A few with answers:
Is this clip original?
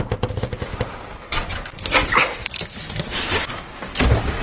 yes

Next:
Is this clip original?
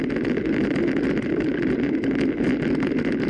yes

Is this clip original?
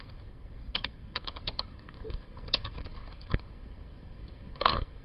no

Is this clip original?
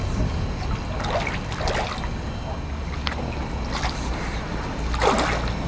yes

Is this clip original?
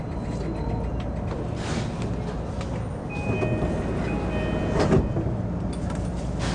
yes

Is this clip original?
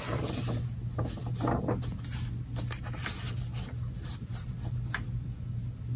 yes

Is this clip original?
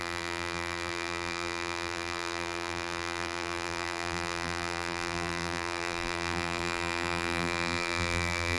no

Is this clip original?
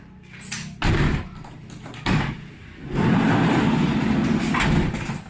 yes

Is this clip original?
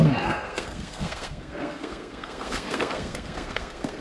no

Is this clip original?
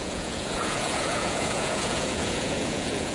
no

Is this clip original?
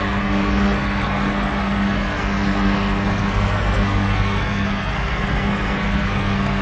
no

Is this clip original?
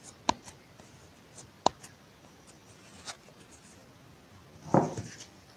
yes